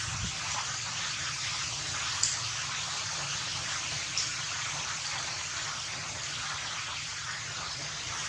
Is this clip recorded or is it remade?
recorded